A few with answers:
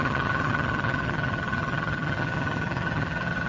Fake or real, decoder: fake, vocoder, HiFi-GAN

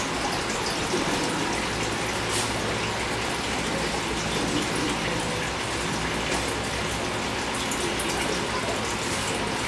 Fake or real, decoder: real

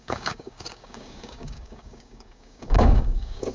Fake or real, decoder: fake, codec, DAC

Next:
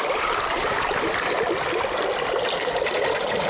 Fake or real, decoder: fake, vocoder, BigVGAN v2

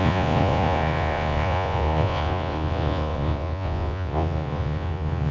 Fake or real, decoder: fake, vocoder, Vocos